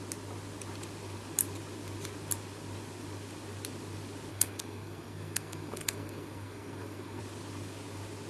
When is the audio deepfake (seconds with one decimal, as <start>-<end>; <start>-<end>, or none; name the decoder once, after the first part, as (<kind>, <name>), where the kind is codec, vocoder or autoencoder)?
4.3-7.2 (codec, SNAC)